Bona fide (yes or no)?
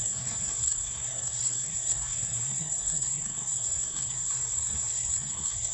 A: no